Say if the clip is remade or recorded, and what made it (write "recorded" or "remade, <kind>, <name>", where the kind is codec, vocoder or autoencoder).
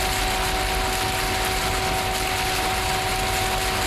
recorded